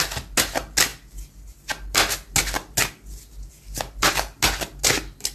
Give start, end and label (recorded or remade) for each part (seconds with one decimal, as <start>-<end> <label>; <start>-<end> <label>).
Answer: 0.0-5.3 recorded